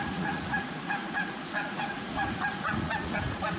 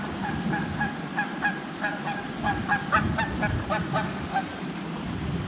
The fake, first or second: first